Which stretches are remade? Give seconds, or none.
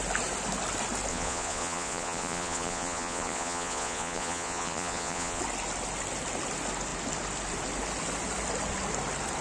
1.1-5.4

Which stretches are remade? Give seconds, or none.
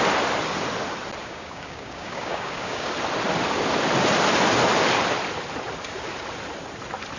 1.2-2.9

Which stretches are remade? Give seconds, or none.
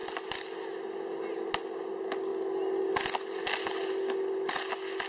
none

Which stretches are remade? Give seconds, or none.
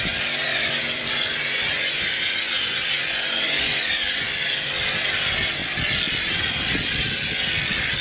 0.5-4.7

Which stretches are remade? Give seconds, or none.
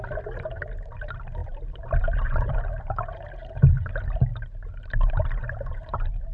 0.0-4.3; 5.1-6.3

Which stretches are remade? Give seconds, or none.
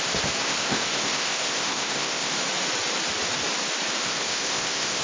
0.4-2.3; 4.0-5.0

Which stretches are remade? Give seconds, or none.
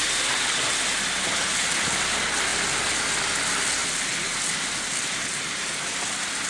none